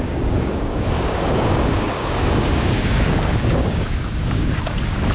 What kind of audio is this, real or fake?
fake